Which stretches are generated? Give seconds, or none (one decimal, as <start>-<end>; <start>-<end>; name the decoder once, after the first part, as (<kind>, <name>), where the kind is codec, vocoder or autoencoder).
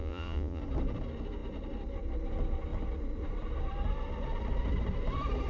0.0-0.6 (vocoder, Vocos)